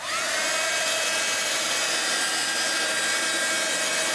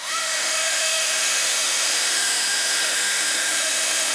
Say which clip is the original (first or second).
first